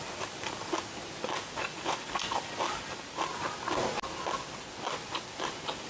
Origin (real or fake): real